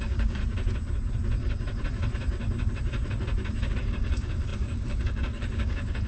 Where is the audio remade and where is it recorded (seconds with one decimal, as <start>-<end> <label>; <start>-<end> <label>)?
0.0-0.4 remade; 0.4-3.7 recorded; 3.7-6.1 remade